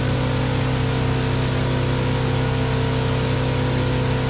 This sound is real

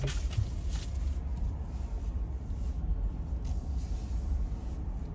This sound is real